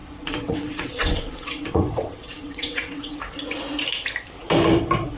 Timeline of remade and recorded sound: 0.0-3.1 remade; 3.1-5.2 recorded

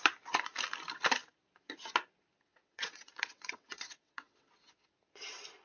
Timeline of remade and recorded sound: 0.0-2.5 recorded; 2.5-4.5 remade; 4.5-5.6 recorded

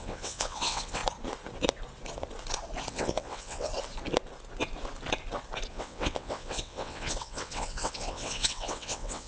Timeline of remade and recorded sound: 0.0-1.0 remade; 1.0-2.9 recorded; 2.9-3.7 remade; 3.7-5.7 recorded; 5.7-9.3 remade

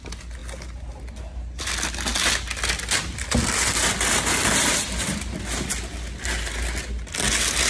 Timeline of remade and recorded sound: 0.0-7.7 recorded

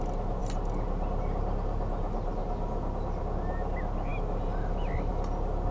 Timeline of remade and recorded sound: 0.0-5.7 recorded

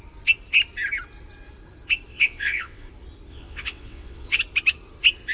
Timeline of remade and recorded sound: 0.0-2.1 recorded; 2.1-2.9 remade; 2.9-3.3 recorded; 3.3-4.4 remade; 4.4-5.3 recorded

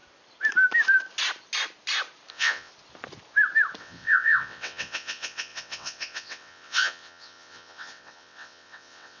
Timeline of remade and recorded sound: 0.0-2.3 recorded; 2.3-2.7 remade; 2.7-3.8 recorded; 3.8-9.2 remade